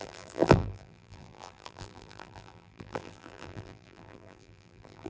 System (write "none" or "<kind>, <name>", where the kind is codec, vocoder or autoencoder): vocoder, BigVGAN v2